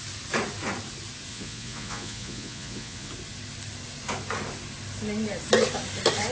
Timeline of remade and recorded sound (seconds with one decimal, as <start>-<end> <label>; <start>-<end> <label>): 0.0-1.3 recorded; 1.3-3.1 remade; 3.1-6.3 recorded